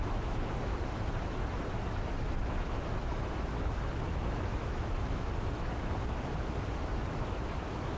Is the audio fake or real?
fake